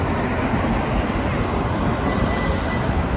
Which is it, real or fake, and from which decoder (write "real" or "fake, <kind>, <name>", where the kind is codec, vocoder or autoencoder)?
real